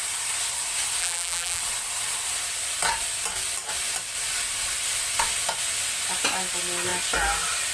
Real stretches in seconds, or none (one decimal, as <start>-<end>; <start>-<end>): 0.0-1.0; 1.6-7.7